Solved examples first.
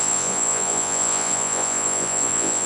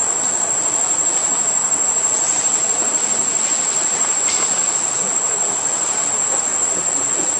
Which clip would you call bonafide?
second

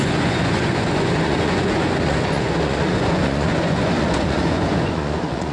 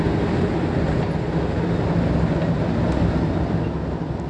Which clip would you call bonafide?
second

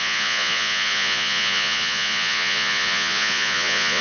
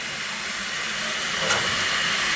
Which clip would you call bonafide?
second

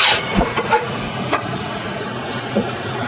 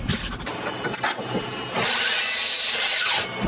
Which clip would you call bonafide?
second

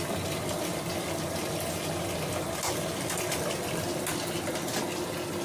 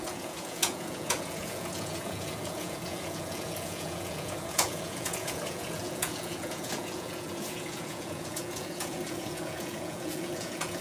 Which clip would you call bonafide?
first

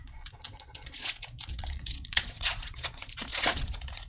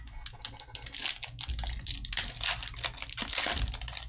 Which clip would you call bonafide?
second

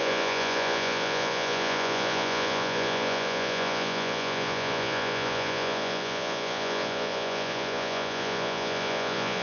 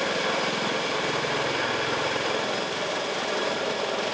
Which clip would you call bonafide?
second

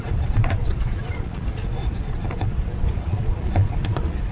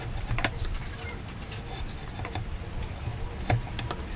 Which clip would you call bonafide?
second